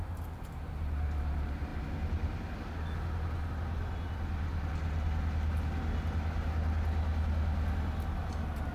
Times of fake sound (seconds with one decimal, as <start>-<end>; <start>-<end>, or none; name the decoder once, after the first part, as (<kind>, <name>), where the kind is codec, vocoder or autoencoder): none